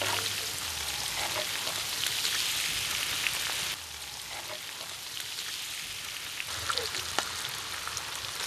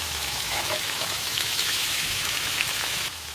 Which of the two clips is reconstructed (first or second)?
second